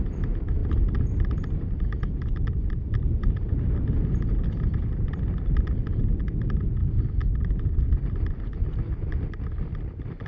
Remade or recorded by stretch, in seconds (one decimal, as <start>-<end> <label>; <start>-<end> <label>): 0.0-10.3 recorded